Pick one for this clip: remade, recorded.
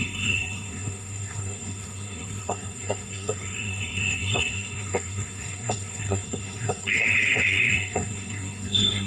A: remade